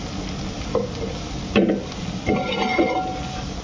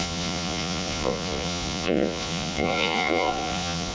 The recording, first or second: first